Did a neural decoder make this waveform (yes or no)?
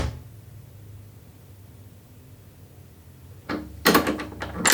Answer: no